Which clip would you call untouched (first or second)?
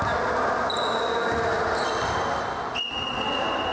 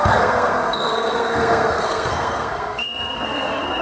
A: first